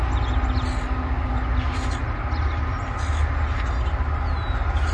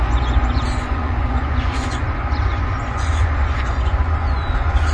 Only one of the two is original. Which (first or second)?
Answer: first